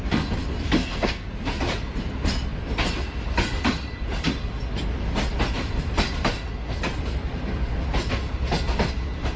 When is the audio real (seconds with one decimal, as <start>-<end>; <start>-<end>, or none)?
0.0-0.8; 1.3-9.4